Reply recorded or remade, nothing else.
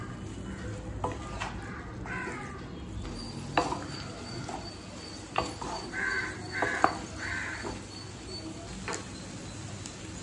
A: recorded